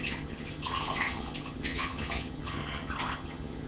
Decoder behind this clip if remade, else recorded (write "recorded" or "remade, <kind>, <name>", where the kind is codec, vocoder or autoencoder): remade, vocoder, HiFi-GAN